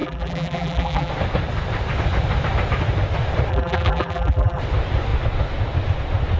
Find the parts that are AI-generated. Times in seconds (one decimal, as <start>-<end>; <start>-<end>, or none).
0.0-1.1; 3.5-4.6